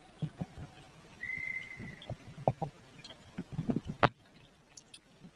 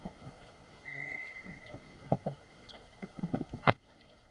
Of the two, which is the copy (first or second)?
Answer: second